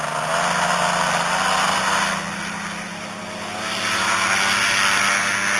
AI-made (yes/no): no